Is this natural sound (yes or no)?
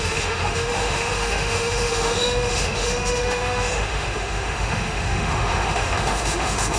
no